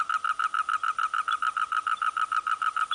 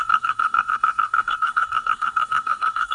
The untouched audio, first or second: first